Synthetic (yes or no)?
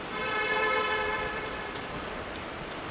yes